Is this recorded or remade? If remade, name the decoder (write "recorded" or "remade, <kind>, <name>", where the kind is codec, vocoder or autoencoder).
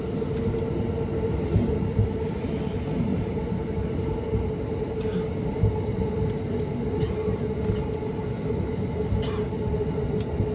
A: recorded